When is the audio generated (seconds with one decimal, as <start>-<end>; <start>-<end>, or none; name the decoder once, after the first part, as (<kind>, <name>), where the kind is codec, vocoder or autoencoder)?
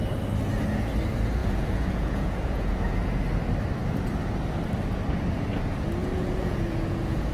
1.4-3.2 (vocoder, Vocos); 6.0-7.3